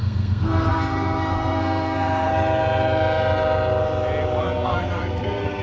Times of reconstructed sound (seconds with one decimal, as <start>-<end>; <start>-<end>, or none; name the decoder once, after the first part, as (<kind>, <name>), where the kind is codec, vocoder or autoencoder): 0.0-2.3 (codec, SNAC); 4.4-5.6